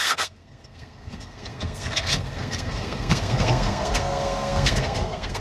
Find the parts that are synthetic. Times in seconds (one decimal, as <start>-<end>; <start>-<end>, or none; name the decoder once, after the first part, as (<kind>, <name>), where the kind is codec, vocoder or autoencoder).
0.0-5.4 (codec, SNAC)